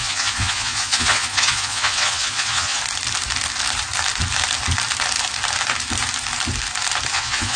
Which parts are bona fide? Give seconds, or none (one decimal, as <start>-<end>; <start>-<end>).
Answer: 2.8-7.1